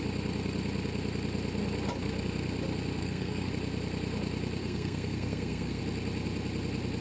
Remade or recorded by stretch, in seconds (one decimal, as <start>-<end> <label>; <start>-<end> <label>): 0.0-3.0 recorded; 3.0-3.5 remade; 3.5-4.6 recorded; 4.6-5.8 remade; 5.8-7.0 recorded